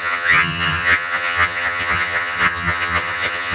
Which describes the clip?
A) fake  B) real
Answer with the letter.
A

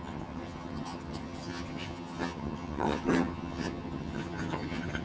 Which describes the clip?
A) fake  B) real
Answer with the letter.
A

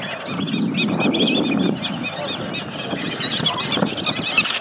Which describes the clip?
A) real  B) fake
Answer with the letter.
A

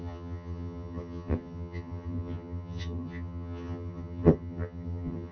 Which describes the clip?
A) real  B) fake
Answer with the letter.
B